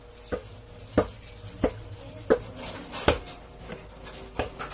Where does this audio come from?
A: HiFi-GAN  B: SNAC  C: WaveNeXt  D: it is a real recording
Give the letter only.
D